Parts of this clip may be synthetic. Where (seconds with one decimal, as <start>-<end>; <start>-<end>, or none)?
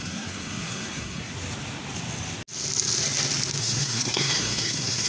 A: 0.0-1.3; 3.6-5.1